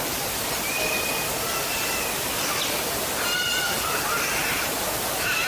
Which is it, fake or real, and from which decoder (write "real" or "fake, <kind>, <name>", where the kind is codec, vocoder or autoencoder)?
fake, vocoder, BigVGAN v2